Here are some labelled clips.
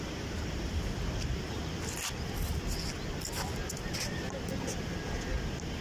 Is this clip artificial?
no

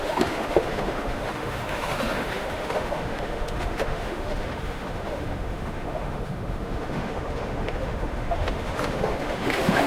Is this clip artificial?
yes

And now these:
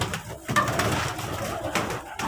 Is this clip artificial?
no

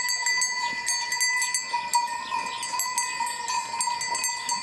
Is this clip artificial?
no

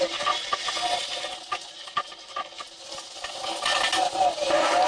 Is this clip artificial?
no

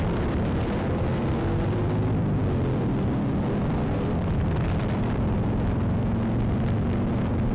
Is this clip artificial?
yes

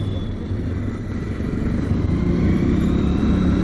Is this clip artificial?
yes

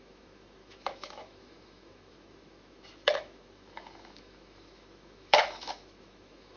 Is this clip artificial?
yes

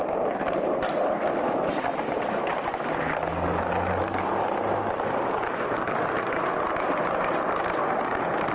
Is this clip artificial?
no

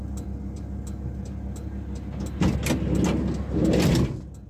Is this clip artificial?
no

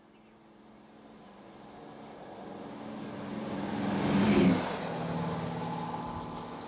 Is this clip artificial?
no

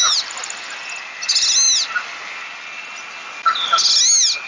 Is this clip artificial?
no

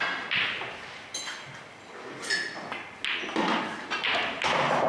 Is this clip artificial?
no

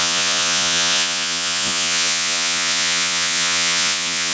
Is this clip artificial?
yes